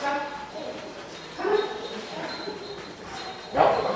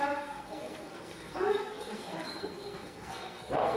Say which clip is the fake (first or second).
second